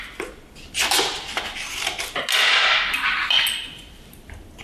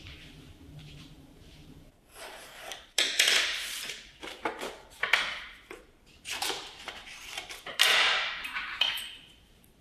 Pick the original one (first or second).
first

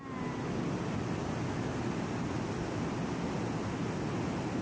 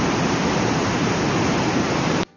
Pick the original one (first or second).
first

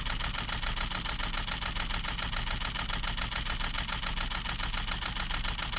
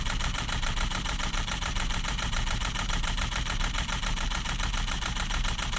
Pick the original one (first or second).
first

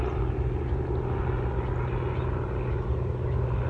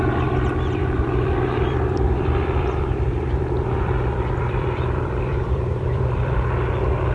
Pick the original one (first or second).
first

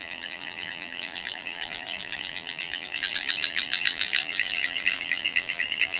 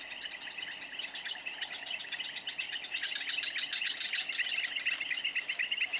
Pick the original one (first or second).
second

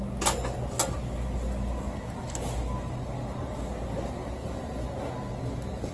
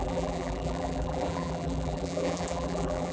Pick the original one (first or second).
first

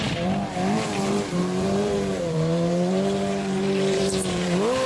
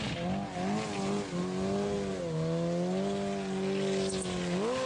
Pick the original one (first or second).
second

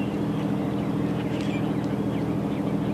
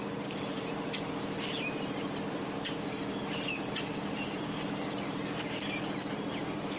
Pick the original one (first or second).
first